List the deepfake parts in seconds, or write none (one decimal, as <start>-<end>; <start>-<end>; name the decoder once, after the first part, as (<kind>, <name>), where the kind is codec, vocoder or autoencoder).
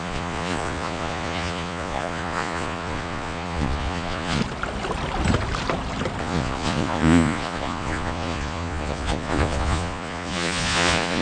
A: 0.0-4.4 (vocoder, Vocos); 6.2-11.2